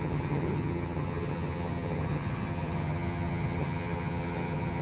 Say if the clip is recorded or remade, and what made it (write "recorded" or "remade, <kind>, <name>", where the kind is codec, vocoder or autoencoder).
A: remade, vocoder, HiFi-GAN